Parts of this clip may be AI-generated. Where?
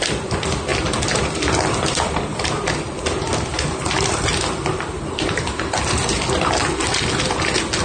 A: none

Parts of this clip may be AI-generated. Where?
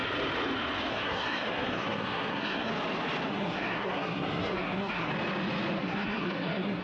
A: 0.9-2.7 (codec, SNAC); 3.3-5.1; 5.8-6.8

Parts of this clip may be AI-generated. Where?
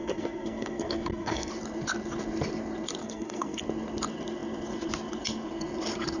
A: 0.0-1.5 (codec, SNAC); 3.0-3.6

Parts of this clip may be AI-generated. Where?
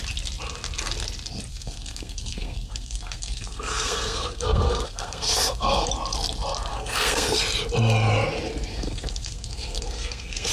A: 1.5-5.9 (codec, SNAC); 6.7-7.4; 8.7-10.5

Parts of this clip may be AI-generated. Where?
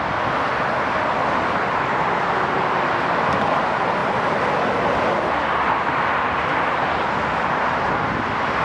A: none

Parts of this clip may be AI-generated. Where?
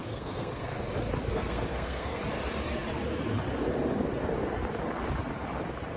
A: 0.0-0.7 (codec, SNAC); 1.3-2.2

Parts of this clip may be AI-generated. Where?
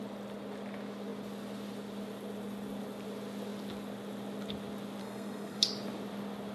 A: 5.0-5.6 (codec, SNAC)